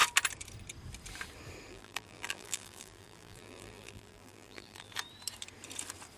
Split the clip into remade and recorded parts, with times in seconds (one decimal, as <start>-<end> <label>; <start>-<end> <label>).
0.0-1.7 recorded; 1.7-4.9 remade; 4.9-6.2 recorded